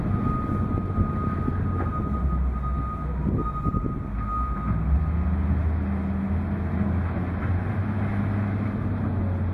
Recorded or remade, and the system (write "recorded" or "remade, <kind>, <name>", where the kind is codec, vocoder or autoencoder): recorded